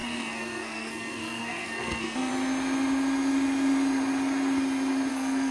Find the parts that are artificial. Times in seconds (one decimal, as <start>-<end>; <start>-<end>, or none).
0.0-2.3; 5.1-5.5